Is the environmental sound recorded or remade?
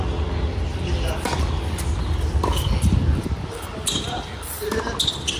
recorded